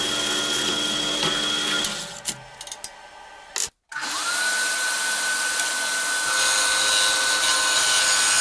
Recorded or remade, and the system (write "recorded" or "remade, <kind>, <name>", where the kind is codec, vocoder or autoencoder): recorded